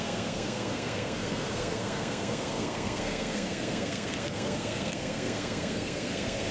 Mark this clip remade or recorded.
remade